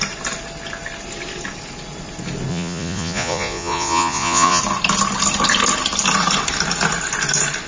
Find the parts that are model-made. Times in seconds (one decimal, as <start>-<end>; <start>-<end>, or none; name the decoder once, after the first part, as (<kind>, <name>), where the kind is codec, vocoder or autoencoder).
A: 2.5-4.6 (vocoder, Vocos)

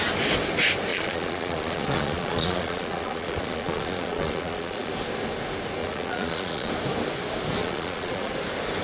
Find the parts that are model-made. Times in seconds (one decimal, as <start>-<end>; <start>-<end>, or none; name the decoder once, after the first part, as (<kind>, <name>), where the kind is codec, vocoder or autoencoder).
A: 0.9-4.9 (vocoder, Vocos); 5.8-6.7; 7.6-8.3

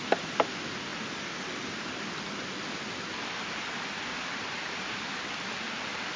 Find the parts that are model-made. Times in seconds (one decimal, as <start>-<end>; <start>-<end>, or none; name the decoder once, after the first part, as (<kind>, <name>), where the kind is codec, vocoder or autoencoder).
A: none

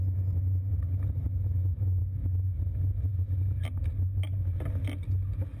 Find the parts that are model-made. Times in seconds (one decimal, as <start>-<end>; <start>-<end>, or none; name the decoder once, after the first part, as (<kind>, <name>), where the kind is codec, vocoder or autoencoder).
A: none

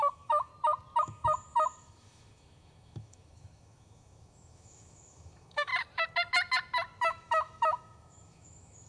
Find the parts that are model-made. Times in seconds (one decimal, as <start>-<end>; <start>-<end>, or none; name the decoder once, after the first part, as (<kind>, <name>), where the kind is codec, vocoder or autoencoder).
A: 0.0-0.5 (autoencoder, DAC-VAE); 1.0-5.7; 7.0-8.9